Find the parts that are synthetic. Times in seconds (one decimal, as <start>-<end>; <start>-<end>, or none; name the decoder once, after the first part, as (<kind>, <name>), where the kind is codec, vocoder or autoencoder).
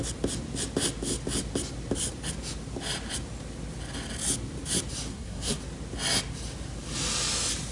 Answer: 5.1-5.6 (codec, SNAC)